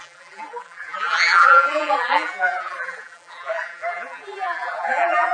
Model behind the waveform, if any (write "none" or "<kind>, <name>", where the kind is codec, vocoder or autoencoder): vocoder, BigVGAN v2